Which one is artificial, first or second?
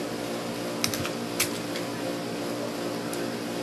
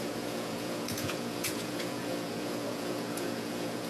second